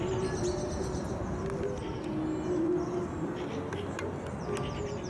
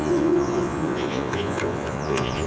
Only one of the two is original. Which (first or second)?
first